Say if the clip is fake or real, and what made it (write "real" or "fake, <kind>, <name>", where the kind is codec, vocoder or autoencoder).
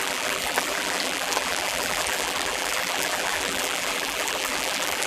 fake, vocoder, BigVGAN v2